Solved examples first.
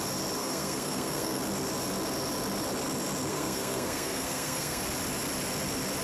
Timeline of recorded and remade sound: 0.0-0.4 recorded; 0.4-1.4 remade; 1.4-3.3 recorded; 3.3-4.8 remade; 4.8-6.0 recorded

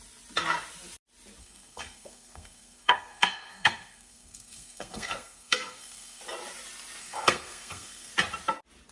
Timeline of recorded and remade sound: 0.0-1.4 recorded; 1.4-6.2 remade; 6.2-7.0 recorded; 7.0-8.1 remade; 8.1-8.9 recorded